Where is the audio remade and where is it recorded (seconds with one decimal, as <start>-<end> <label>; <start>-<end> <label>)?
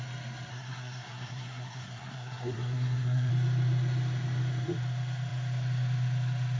0.0-0.5 recorded; 0.5-3.3 remade; 3.3-6.6 recorded